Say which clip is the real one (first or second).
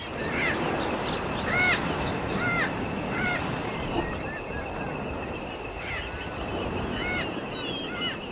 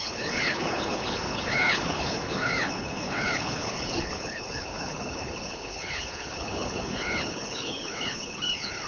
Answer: first